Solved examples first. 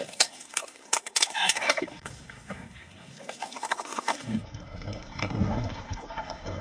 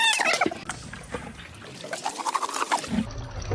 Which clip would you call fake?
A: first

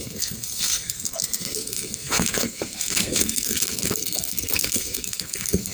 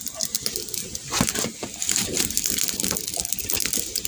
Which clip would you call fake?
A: first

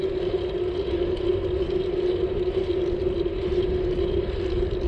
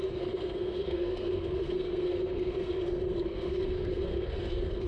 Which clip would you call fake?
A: second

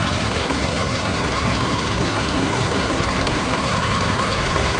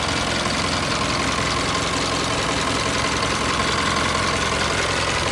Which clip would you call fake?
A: first